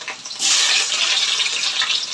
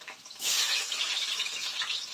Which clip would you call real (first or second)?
first